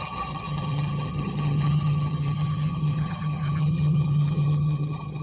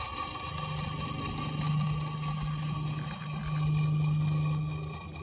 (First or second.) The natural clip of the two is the second